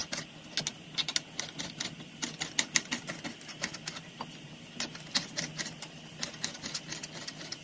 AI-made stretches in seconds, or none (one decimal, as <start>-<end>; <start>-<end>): none